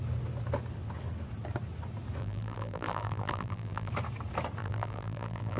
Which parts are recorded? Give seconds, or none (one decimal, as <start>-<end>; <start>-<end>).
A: 0.0-2.2; 3.9-4.6